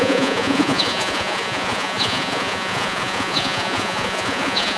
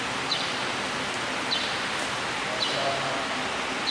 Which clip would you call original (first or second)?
second